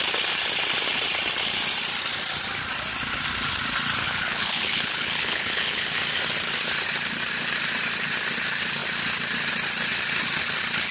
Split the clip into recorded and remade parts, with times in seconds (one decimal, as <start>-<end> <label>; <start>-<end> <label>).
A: 0.0-4.0 recorded; 4.0-6.0 remade; 6.0-10.9 recorded